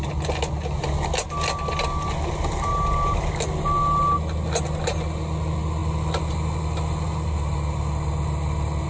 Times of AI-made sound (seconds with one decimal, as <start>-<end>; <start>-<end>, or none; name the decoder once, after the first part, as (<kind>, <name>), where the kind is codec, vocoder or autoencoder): none